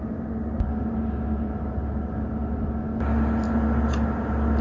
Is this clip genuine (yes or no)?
yes